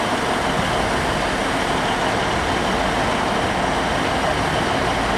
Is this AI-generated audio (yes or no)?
no